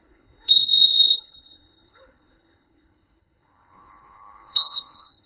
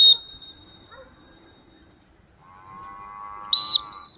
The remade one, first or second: first